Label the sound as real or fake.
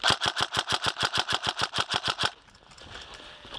real